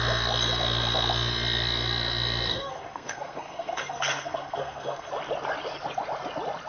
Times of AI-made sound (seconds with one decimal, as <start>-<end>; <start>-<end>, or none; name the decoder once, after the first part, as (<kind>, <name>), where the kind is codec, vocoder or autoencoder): 2.5-5.1 (codec, SNAC)